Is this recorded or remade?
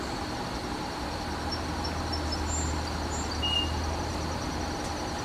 recorded